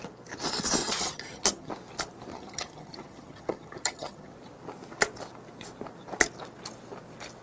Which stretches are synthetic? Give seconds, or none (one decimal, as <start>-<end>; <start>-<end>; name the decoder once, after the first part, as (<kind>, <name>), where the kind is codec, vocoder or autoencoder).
0.8-1.7 (vocoder, HiFi-GAN); 2.3-4.3